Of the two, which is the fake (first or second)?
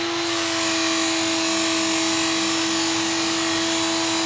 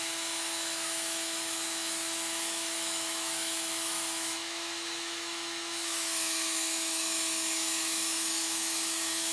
second